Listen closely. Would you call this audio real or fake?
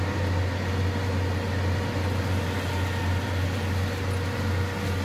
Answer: real